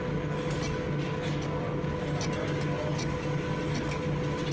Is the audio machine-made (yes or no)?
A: no